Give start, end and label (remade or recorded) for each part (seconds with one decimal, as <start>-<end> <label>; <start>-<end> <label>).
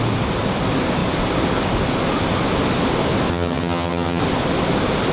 0.0-3.3 recorded; 3.3-4.2 remade; 4.2-5.1 recorded